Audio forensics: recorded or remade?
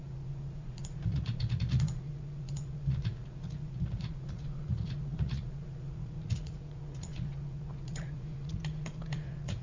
remade